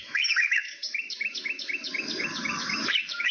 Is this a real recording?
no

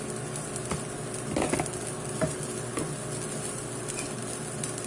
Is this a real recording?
yes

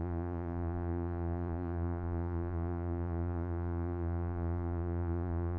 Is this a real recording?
no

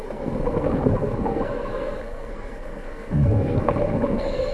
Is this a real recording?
no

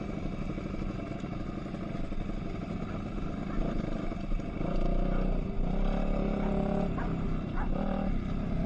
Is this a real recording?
yes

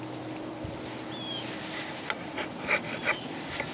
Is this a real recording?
yes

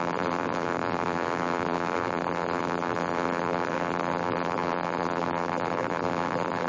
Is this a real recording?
no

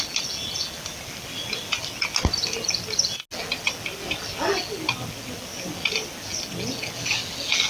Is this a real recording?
yes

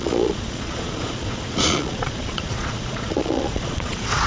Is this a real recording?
no